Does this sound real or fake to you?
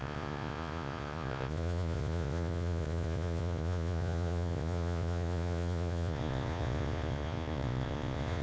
fake